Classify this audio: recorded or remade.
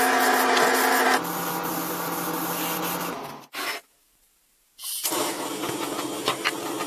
recorded